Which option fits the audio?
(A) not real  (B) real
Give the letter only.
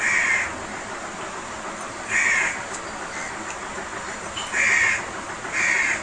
B